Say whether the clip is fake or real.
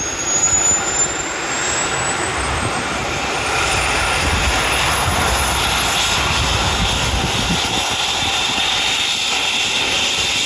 real